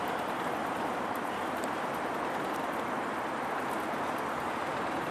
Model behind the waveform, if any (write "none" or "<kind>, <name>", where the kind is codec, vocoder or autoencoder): none